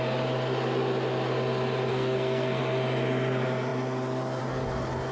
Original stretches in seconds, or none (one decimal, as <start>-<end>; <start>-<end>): 0.0-1.9; 2.6-5.1